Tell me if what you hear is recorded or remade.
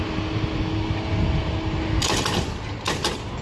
recorded